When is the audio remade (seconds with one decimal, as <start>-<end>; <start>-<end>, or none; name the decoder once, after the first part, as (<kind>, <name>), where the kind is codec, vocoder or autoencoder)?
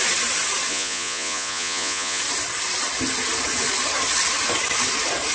0.7-2.2 (vocoder, Vocos)